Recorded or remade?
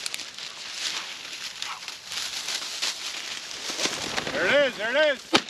recorded